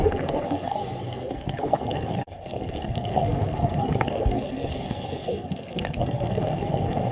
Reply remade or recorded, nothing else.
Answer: remade